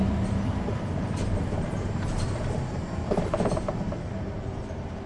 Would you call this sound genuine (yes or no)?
no